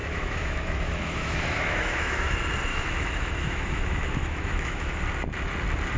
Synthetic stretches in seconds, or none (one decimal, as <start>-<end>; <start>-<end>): 0.0-2.3; 2.7-5.0